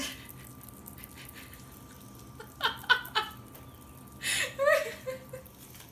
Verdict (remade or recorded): recorded